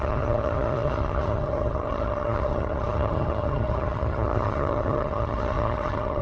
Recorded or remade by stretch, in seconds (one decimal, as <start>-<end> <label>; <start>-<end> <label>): 0.0-6.2 remade